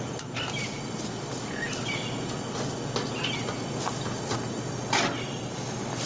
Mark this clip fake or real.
real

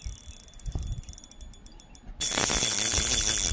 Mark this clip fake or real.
fake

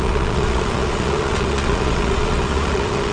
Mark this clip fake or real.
fake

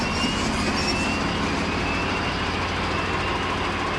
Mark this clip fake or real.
real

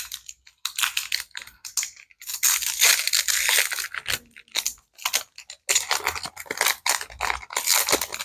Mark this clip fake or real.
real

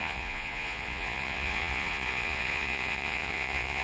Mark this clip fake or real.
fake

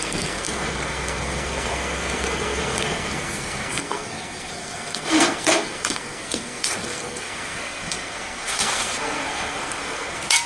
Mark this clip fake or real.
fake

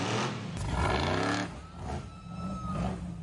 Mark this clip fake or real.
real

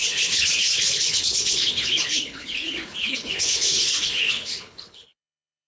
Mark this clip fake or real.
fake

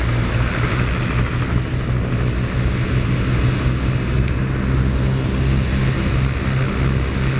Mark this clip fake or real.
real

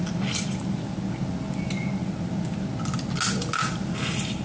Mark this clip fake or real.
real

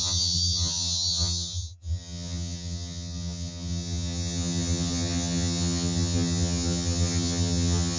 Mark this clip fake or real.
fake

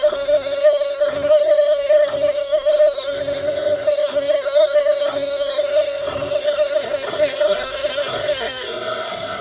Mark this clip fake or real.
fake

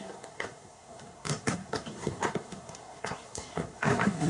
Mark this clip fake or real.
fake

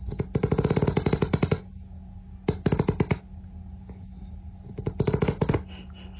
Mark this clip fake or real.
real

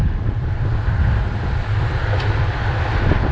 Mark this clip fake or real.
real